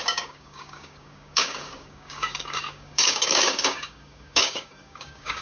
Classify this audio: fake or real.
fake